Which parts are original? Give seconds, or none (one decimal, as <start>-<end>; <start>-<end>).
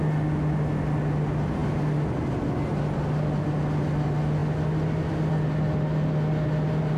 0.0-7.0